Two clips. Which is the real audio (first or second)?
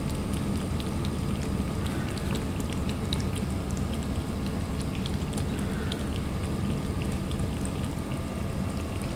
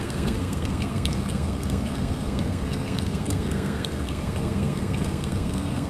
first